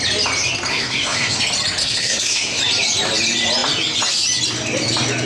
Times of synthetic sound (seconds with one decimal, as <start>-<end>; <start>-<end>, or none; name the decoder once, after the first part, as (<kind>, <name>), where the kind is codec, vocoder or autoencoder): 0.7-1.4 (codec, SNAC); 1.8-2.6